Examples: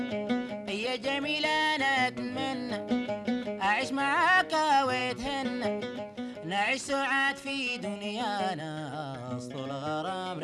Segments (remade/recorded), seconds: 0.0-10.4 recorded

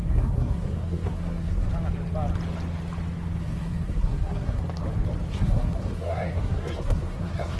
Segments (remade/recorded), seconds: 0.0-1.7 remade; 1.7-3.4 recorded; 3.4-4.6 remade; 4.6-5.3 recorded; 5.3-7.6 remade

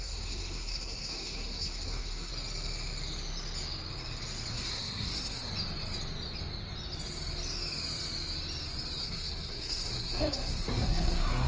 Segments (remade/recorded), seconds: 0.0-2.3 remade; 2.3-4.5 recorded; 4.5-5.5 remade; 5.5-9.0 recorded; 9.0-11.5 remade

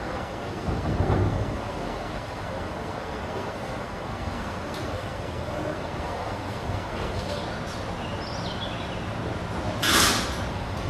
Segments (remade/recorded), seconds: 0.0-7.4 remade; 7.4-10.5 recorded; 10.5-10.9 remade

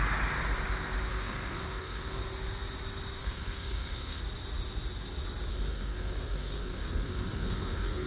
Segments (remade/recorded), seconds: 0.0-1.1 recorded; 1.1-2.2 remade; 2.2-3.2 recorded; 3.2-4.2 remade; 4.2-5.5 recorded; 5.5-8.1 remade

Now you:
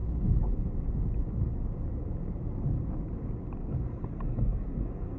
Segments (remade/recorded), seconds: 0.0-3.6 recorded; 3.6-5.2 remade